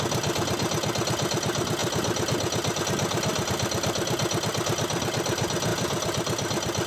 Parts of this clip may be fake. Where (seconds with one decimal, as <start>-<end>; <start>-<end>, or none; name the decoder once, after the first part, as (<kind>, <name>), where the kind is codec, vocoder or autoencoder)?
5.7-6.9 (vocoder, BigVGAN v2)